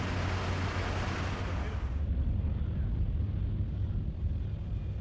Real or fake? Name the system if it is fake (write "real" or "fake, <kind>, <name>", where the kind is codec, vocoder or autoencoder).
real